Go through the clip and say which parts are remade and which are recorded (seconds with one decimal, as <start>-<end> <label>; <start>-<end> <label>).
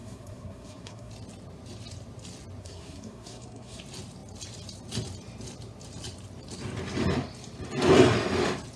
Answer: 0.0-1.1 remade; 1.1-2.6 recorded; 2.6-3.8 remade; 3.8-8.8 recorded